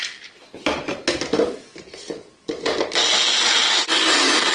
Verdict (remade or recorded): recorded